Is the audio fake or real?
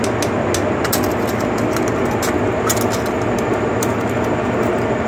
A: real